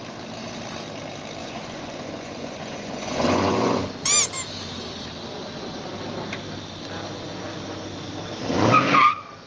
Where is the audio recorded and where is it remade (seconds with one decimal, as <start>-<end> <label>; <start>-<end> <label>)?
0.0-1.4 recorded; 1.4-3.9 remade; 3.9-9.5 recorded

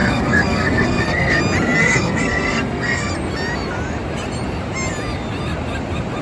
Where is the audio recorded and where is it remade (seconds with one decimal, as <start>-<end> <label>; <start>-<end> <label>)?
0.0-1.4 remade; 1.4-1.8 recorded; 1.8-3.1 remade; 3.1-6.2 recorded

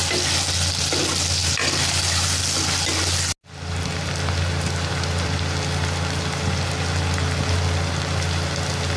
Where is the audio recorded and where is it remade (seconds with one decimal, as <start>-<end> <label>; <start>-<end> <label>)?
0.0-1.4 recorded; 1.4-2.4 remade; 2.4-9.0 recorded

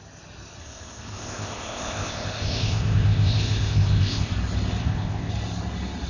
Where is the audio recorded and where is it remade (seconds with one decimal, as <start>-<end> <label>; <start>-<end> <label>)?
0.0-0.6 recorded; 0.6-4.3 remade; 4.3-4.8 recorded; 4.8-5.3 remade; 5.3-6.1 recorded

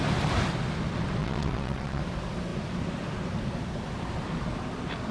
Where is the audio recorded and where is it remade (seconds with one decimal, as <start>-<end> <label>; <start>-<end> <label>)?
0.0-1.2 recorded; 1.2-2.0 remade; 2.0-5.1 recorded